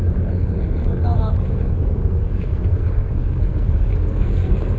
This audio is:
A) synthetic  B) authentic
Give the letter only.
A